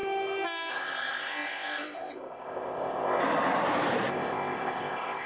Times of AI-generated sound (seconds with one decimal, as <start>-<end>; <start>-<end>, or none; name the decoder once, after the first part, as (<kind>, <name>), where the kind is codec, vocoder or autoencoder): 0.7-3.2 (codec, ZipCodec); 4.1-5.3